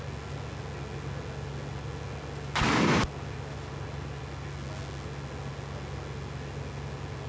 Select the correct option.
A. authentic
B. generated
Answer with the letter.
A